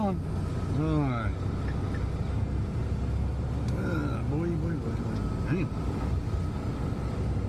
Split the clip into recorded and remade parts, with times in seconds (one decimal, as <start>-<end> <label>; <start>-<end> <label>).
0.0-7.5 recorded